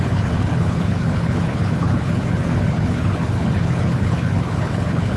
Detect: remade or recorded remade